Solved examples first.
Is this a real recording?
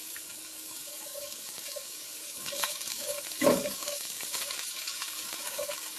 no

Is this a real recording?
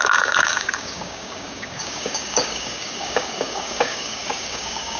no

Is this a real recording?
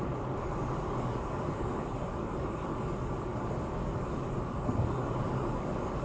no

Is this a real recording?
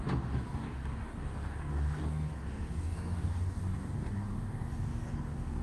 no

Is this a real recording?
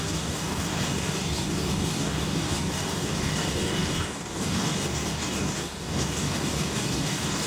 no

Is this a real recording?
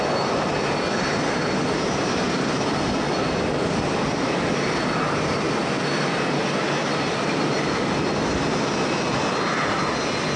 yes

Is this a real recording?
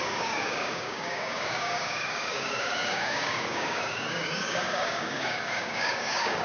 no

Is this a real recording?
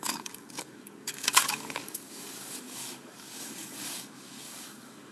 no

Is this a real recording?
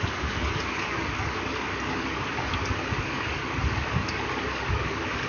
no